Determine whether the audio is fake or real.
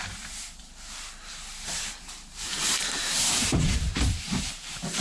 fake